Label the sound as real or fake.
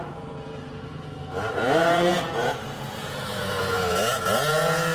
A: fake